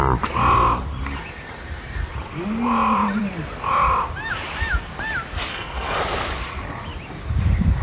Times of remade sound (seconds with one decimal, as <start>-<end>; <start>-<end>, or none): 5.5-6.0